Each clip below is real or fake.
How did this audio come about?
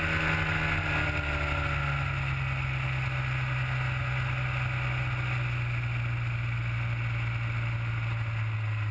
real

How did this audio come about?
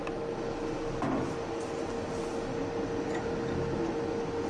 real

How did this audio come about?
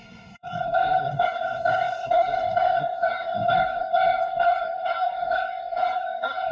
fake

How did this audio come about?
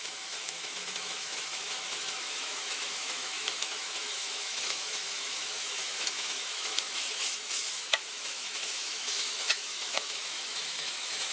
fake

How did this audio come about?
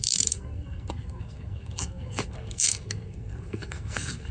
fake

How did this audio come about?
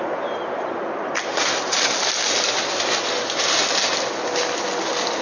real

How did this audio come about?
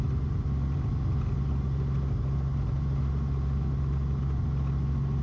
real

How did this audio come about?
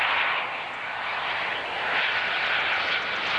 real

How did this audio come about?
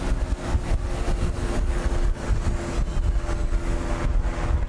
real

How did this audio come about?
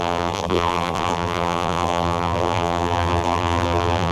fake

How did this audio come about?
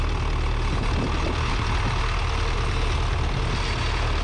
real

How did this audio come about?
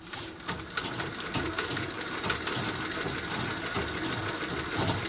real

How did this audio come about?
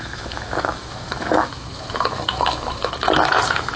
fake